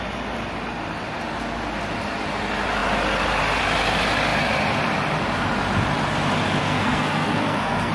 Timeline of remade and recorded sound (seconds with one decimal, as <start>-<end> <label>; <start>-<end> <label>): 0.0-6.6 recorded; 6.6-7.9 remade